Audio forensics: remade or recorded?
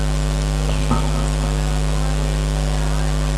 recorded